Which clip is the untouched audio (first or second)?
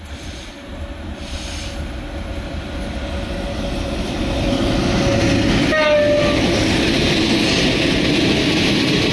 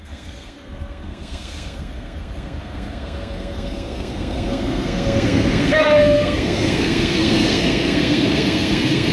first